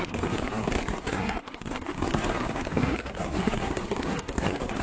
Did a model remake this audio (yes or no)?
yes